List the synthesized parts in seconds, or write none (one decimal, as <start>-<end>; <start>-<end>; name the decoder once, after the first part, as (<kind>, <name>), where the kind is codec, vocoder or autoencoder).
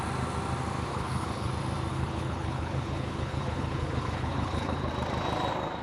0.9-1.5 (codec, HILCodec); 1.9-4.9